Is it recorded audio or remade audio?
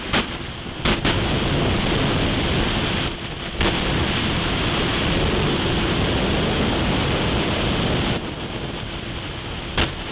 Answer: recorded